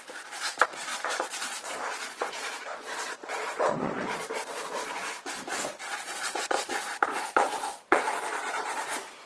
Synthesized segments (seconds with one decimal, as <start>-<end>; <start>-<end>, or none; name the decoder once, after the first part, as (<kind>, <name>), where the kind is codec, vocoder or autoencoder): 0.9-5.3 (vocoder, Vocos); 5.9-8.8